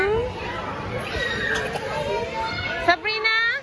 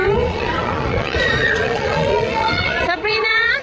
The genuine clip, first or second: first